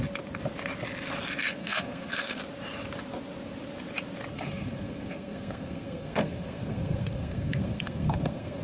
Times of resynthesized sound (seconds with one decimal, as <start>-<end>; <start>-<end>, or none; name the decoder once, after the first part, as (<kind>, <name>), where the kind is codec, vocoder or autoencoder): 1.6-2.4 (codec, SNAC); 4.3-8.6